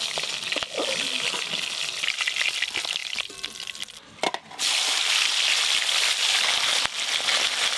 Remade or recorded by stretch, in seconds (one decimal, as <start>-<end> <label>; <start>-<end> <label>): 0.0-7.8 recorded